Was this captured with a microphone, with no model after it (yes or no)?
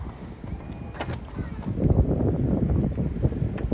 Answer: yes